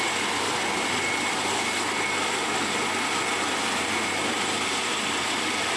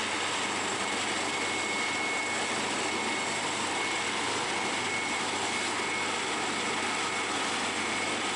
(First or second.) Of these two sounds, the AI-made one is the first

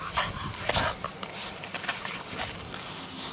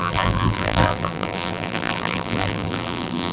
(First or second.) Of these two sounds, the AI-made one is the second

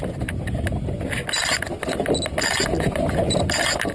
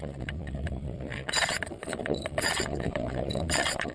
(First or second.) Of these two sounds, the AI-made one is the second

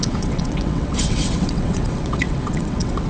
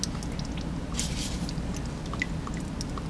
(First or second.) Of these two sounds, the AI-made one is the first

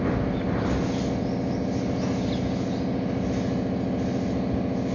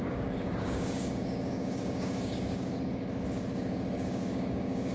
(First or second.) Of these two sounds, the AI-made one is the second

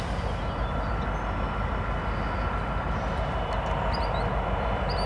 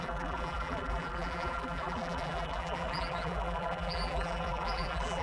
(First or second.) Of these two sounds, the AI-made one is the second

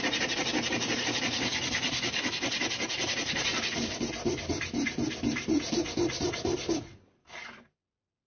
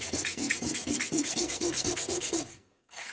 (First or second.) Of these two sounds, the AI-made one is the second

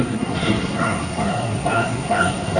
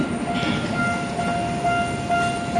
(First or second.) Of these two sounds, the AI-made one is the first